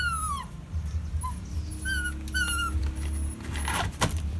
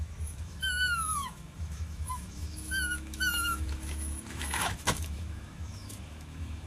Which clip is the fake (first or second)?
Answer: second